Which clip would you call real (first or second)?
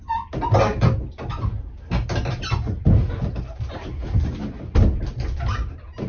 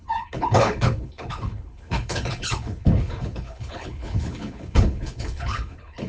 first